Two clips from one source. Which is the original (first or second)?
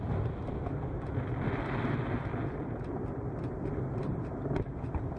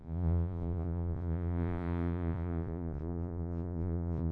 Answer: first